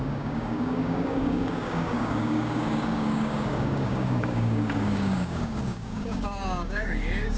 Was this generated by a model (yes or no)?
yes